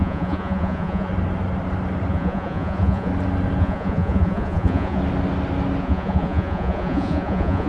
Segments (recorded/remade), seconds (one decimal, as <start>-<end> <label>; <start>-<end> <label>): 0.0-1.1 remade; 1.1-2.1 recorded; 2.1-3.1 remade; 3.1-3.6 recorded; 3.6-5.0 remade; 5.0-5.8 recorded; 5.8-7.7 remade